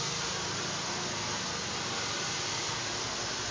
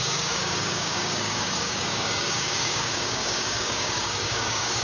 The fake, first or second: second